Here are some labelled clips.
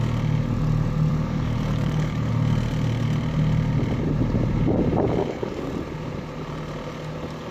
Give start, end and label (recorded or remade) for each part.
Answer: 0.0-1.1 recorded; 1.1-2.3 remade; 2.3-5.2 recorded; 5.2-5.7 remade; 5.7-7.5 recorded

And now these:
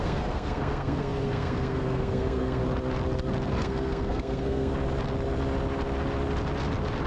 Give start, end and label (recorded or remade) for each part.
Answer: 0.0-2.6 remade; 2.6-3.5 recorded; 3.5-4.7 remade; 4.7-7.1 recorded

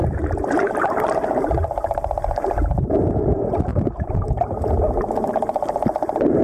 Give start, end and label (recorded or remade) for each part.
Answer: 0.0-6.4 recorded

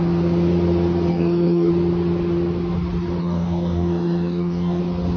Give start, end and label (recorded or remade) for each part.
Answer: 0.0-1.1 recorded; 1.1-1.7 remade; 1.7-3.2 recorded; 3.2-4.8 remade; 4.8-5.2 recorded